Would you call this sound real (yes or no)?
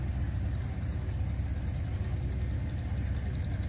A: yes